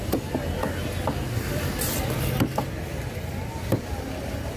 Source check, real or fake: real